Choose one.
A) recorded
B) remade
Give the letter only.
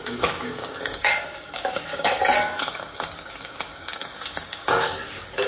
B